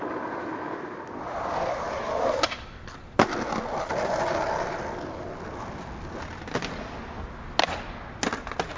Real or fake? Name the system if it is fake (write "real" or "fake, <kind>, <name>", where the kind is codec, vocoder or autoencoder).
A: real